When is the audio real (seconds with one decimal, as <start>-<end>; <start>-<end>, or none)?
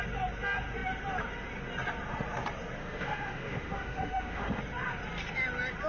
0.0-2.8; 4.6-5.9